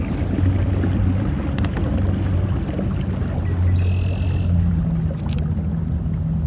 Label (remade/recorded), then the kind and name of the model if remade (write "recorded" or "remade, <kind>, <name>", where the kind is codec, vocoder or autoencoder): recorded